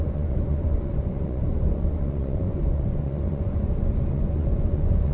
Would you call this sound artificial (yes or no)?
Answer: yes